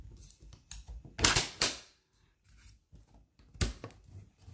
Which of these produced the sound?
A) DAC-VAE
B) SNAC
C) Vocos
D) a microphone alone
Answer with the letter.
D